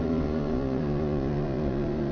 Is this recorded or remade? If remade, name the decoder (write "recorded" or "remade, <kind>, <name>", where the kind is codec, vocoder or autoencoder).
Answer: remade, vocoder, Vocos